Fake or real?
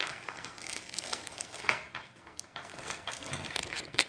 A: fake